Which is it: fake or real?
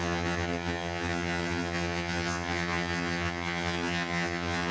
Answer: fake